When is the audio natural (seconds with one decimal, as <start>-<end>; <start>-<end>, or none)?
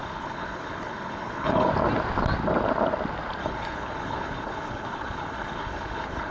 1.7-3.4